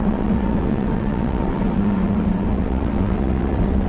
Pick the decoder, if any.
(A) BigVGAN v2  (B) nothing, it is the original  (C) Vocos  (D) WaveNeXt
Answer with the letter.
D